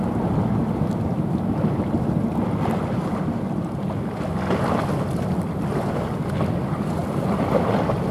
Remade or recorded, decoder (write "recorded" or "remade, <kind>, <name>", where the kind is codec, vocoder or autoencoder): recorded